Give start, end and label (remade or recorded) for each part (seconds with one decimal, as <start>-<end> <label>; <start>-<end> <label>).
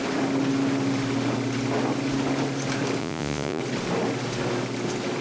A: 0.0-3.0 recorded; 3.0-3.6 remade; 3.6-5.2 recorded